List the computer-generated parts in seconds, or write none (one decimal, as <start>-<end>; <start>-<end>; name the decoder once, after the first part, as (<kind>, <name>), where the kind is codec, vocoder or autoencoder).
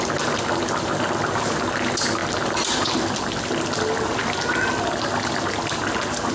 none